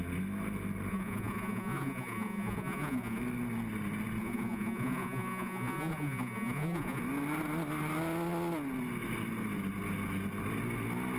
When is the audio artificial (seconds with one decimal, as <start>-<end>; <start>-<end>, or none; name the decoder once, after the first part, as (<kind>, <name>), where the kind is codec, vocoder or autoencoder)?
0.9-3.2 (vocoder, Vocos); 4.2-7.0